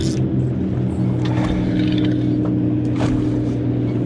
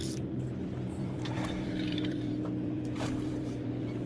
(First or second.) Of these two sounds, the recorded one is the first